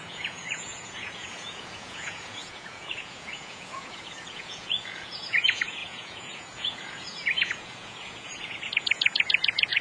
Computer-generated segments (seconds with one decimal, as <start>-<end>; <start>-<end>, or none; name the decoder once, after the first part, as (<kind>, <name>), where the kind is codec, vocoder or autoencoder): 0.0-9.8 (vocoder, Vocos)